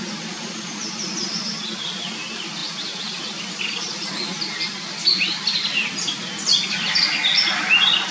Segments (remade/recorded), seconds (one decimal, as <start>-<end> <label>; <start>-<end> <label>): 0.0-8.1 recorded